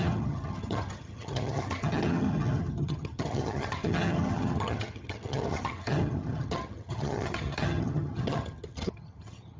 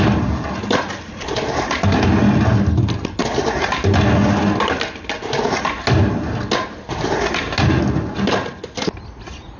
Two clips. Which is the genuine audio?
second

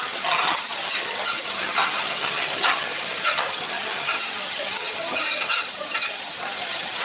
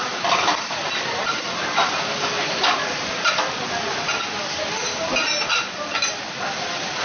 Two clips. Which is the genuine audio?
second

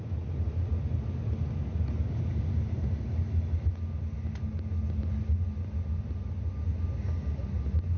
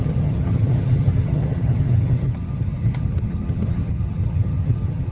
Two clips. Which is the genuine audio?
first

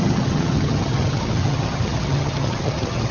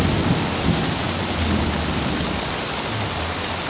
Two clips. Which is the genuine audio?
second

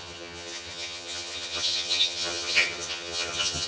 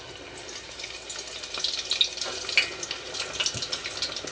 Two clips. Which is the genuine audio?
second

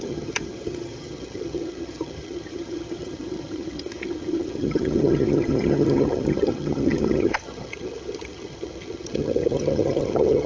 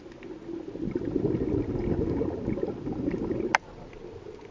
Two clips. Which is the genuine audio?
second